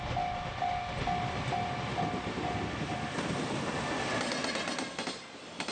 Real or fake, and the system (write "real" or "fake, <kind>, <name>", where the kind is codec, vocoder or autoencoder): real